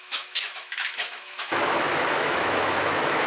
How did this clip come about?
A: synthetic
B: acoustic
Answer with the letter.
A